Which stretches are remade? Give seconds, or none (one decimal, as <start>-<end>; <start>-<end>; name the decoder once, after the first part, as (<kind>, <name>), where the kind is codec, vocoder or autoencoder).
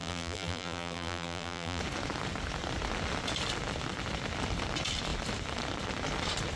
0.0-1.8 (vocoder, BigVGAN v2)